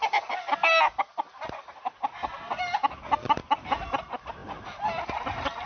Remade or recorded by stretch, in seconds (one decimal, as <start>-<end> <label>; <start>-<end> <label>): 0.0-5.7 recorded